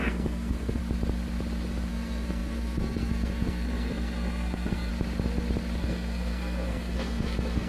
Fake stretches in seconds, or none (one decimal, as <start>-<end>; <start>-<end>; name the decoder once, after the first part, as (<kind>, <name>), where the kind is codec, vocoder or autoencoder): 0.0-0.8 (codec, SNAC); 1.9-4.9; 5.8-7.7